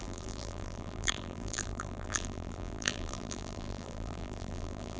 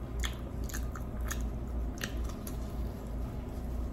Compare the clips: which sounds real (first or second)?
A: second